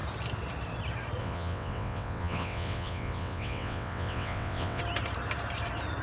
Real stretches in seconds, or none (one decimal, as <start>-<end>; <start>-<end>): 0.0-1.2; 4.8-6.0

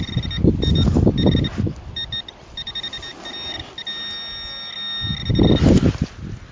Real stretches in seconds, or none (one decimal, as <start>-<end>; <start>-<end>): 0.0-6.5

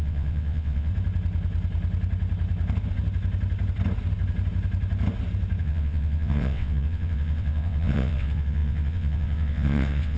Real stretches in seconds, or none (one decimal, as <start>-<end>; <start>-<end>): 0.9-5.6

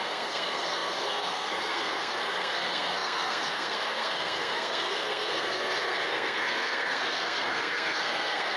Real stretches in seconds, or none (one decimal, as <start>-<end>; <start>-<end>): none

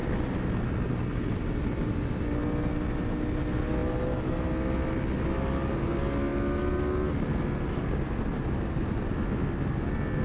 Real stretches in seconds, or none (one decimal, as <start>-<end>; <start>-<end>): 0.0-10.2